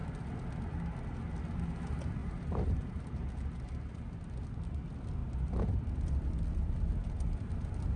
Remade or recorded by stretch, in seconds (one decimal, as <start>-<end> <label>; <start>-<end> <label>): 0.0-2.2 recorded; 2.2-2.9 remade; 2.9-5.2 recorded; 5.2-5.9 remade; 5.9-8.0 recorded